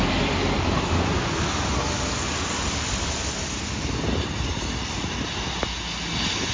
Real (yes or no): yes